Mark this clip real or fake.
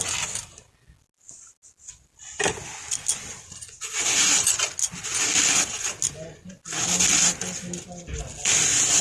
real